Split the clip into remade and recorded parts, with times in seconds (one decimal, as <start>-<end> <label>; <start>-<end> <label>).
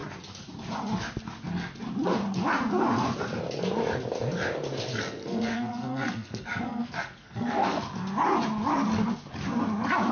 0.0-4.9 recorded; 4.9-7.8 remade; 7.8-10.1 recorded